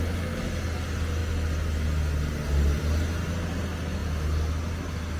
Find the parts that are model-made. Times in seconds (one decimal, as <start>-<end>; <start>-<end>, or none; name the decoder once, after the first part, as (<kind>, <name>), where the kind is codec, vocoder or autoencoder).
none